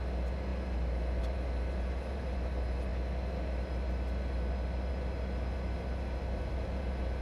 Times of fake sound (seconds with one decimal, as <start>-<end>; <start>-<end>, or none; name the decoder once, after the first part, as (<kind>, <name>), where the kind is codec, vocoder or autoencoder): none